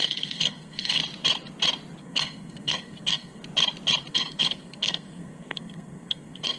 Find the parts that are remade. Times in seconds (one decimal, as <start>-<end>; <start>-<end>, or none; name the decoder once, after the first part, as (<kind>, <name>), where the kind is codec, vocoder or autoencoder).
0.0-1.0 (codec, SNAC); 2.0-3.4; 4.1-6.6

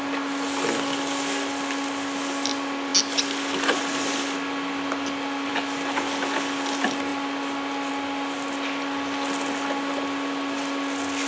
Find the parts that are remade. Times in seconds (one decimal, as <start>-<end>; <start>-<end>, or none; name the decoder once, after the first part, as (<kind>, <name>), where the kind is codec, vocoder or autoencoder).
none

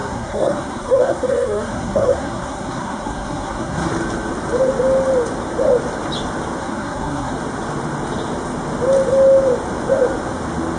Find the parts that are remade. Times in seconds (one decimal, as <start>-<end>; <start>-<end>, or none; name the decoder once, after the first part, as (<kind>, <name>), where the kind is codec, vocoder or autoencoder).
0.0-3.9 (codec, SNAC); 6.6-7.3

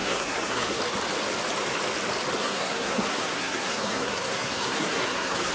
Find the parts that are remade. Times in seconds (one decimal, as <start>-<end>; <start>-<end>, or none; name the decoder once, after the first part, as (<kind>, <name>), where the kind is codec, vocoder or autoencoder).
0.0-0.8 (codec, SNAC); 2.4-5.5

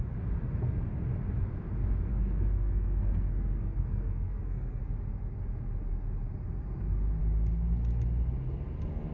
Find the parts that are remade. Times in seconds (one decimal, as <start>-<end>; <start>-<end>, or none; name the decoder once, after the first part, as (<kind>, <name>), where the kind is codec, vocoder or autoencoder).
2.1-4.8 (codec, SNAC)

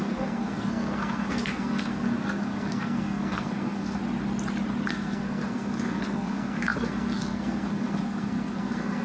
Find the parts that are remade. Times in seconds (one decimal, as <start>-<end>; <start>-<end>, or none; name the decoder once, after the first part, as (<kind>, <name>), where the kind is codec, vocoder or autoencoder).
0.0-4.0 (codec, SNAC); 4.9-9.0